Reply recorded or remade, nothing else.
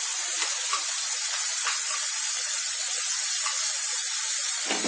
remade